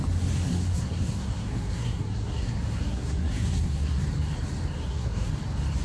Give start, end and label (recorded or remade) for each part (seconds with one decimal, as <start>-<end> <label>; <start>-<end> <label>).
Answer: 0.0-0.5 recorded; 0.5-4.0 remade; 4.0-4.8 recorded; 4.8-5.3 remade; 5.3-5.8 recorded

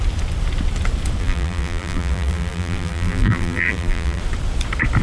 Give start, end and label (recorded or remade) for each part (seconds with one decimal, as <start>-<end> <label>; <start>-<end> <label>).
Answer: 0.0-1.2 recorded; 1.2-4.2 remade; 4.2-5.0 recorded